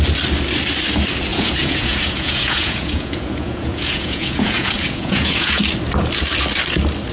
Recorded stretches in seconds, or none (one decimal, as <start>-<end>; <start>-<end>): 0.0-1.3; 5.6-7.1